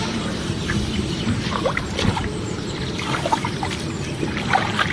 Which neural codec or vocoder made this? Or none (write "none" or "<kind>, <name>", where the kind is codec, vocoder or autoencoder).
vocoder, BigVGAN v2